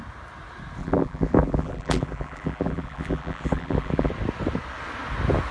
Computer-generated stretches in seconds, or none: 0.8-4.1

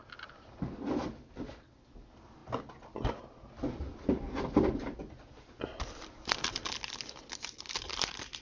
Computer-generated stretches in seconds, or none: 0.0-0.5

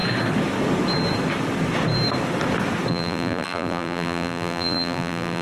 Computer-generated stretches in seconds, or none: 2.9-5.4

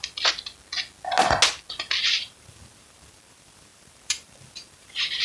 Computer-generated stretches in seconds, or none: 2.0-5.2

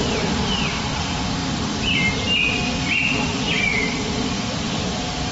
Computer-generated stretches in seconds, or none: 3.7-5.3

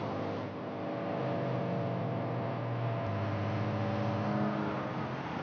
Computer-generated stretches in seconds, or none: 0.0-1.1

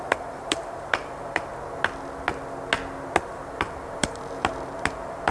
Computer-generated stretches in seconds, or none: 0.0-1.5; 3.2-5.3